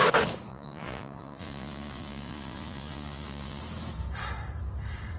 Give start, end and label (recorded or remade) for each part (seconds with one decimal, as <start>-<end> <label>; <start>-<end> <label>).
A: 0.0-0.5 recorded; 0.5-3.6 remade; 3.6-5.2 recorded